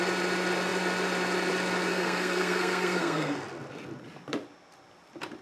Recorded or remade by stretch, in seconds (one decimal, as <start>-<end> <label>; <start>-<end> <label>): 0.0-1.9 recorded; 1.9-3.4 remade; 3.4-5.4 recorded